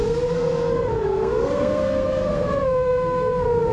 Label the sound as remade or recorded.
remade